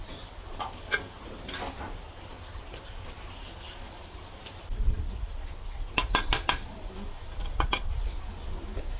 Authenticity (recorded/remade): recorded